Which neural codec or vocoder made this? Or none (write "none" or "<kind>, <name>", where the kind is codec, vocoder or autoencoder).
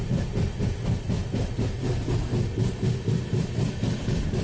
none